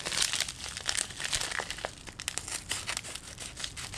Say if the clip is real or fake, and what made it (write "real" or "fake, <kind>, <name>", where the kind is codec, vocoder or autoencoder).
real